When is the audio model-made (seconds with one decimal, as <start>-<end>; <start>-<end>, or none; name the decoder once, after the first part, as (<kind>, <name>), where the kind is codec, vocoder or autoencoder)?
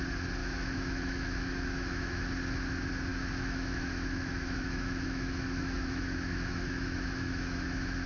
0.4-2.2 (autoencoder, DAC-VAE); 3.1-8.1